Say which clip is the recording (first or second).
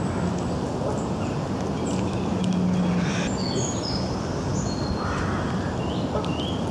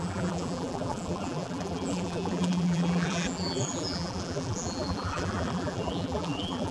first